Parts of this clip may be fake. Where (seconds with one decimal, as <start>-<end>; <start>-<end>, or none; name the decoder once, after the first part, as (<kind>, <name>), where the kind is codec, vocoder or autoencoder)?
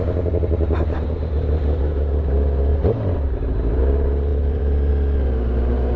2.7-3.8 (vocoder, BigVGAN v2); 4.3-4.9